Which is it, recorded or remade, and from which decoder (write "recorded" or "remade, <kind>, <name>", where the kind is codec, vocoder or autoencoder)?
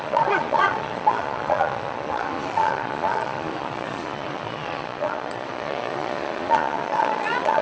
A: remade, vocoder, Vocos